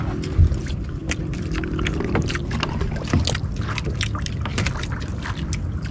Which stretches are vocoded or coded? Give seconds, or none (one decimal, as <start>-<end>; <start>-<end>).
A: 1.0-2.4